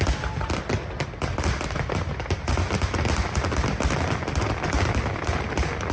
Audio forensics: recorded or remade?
recorded